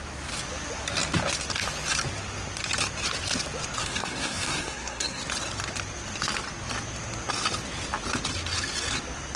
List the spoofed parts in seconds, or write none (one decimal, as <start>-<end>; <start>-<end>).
3.8-5.2